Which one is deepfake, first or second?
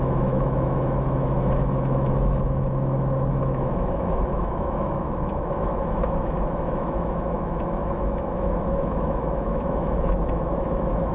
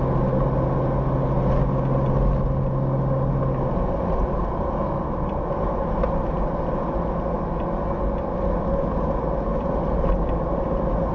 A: first